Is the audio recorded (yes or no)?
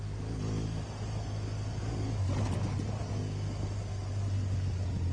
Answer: yes